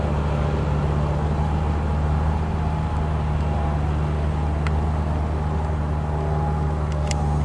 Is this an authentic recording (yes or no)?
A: yes